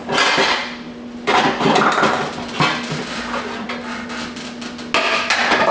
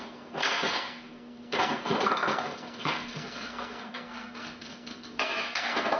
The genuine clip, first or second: first